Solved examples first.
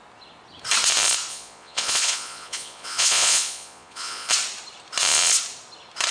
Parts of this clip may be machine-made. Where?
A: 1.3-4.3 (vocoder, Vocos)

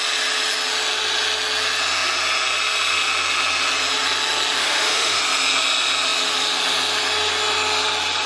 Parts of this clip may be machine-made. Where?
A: 4.6-5.2 (autoencoder, DAC-VAE)

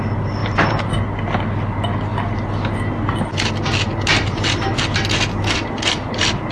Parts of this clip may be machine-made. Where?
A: 0.4-0.9 (vocoder, BigVGAN v2); 4.1-4.8

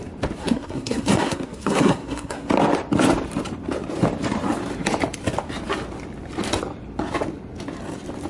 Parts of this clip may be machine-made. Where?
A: 0.4-2.5 (codec, SNAC)

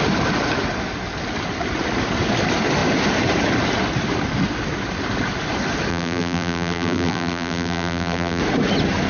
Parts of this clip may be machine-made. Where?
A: 5.9-8.4 (vocoder, BigVGAN v2)